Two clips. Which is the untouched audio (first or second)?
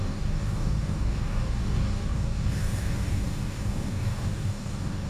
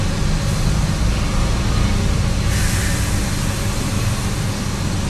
second